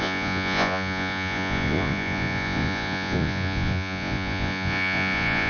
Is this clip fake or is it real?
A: fake